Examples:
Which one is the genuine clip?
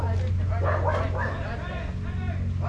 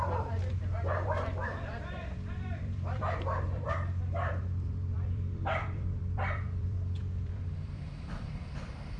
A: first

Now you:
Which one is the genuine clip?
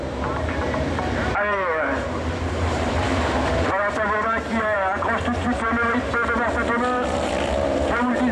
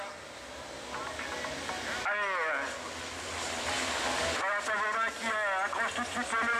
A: second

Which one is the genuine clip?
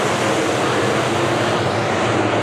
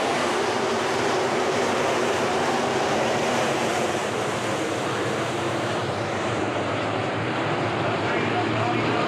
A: first